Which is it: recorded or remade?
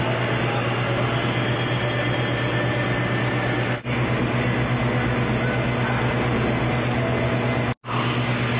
recorded